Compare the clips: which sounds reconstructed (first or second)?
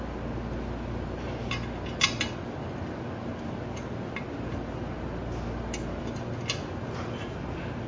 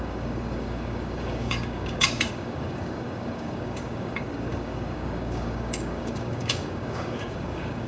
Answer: second